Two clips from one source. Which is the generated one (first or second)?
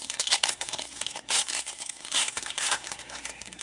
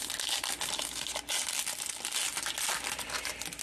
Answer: first